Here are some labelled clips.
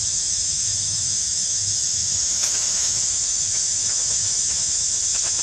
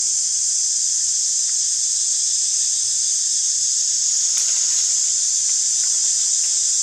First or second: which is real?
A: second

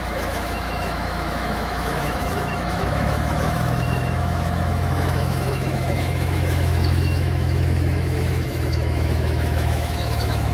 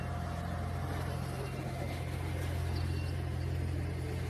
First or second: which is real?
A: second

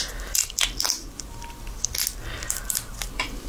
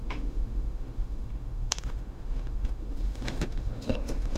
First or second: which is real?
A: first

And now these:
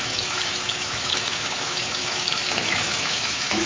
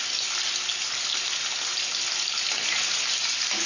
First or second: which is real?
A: second